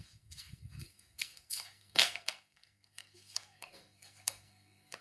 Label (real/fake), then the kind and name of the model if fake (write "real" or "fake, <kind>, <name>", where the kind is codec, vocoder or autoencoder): fake, codec, SNAC